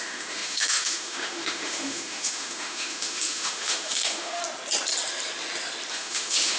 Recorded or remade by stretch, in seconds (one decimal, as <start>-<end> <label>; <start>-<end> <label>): 0.0-4.4 remade; 4.4-5.9 recorded; 5.9-6.6 remade